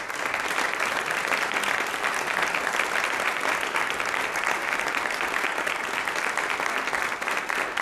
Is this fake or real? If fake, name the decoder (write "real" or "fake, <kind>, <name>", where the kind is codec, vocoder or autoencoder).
real